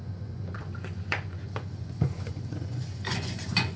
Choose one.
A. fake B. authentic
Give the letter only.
A